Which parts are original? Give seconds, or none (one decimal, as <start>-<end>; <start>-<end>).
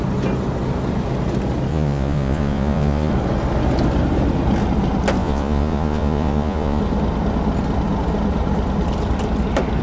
0.0-1.7; 3.1-5.2; 6.8-9.8